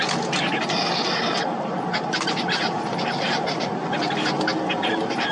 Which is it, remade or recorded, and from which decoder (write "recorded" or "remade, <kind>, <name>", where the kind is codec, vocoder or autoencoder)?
recorded